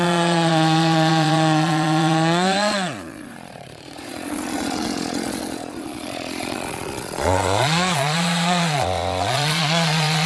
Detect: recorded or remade remade